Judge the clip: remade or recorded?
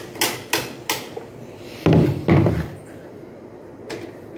recorded